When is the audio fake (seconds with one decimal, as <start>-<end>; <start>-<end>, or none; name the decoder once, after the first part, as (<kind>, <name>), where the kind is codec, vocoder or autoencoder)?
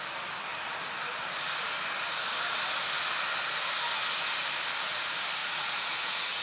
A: 5.4-6.4 (vocoder, Vocos)